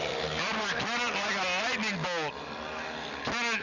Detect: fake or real real